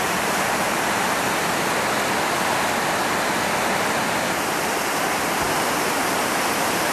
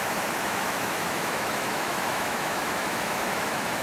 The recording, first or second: first